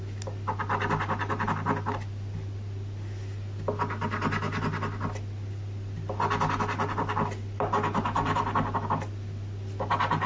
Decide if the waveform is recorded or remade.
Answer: recorded